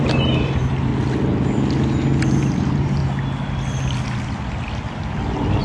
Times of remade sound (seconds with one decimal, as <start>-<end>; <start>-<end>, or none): 0.0-0.9; 2.2-3.0